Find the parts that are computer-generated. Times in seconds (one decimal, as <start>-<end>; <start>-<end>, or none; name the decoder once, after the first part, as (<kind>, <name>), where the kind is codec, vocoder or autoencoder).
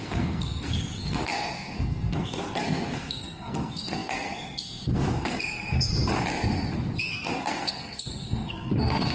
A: 0.0-5.9 (codec, SNAC); 7.0-9.1